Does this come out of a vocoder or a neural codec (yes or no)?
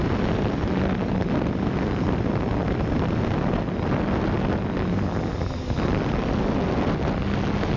no